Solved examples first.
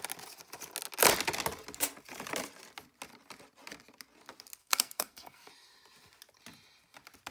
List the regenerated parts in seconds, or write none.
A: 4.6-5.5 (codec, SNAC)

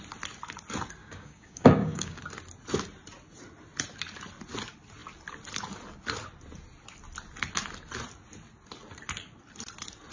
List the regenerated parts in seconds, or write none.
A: 1.0-2.2 (codec, DAC)

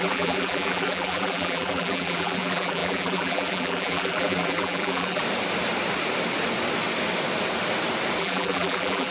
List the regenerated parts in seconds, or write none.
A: 0.0-5.2 (vocoder, BigVGAN v2); 8.2-9.1

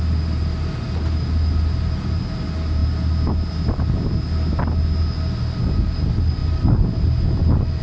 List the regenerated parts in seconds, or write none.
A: none